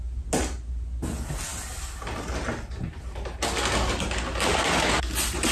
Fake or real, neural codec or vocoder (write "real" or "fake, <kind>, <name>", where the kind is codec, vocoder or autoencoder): real